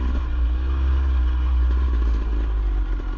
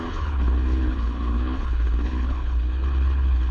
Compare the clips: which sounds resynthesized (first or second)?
second